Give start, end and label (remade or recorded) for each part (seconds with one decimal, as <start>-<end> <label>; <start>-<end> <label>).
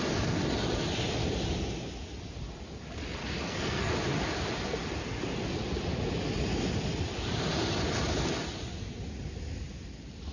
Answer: 0.0-3.2 recorded; 3.2-3.9 remade; 3.9-10.3 recorded